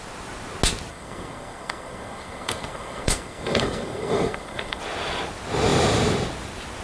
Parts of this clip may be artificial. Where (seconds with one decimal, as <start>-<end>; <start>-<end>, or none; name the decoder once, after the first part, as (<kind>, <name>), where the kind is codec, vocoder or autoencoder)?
0.9-4.8 (codec, SNAC)